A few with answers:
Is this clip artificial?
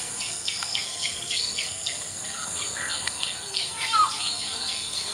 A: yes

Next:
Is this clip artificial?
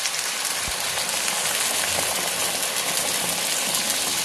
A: no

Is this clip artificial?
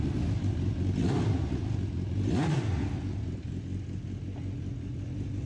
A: no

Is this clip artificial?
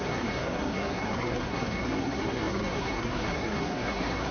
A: yes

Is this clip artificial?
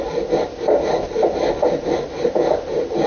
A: no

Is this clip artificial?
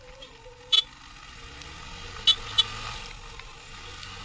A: no